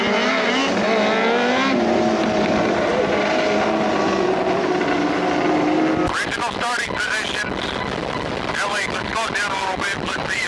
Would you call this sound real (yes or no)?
yes